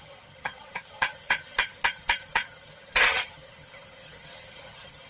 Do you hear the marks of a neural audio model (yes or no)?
yes